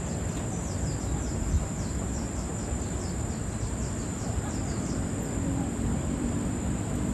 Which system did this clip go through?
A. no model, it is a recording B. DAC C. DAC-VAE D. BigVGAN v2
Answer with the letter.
D